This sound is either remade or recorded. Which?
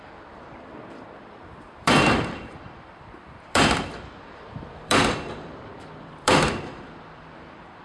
remade